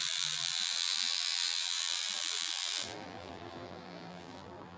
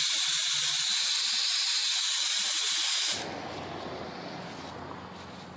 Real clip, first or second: second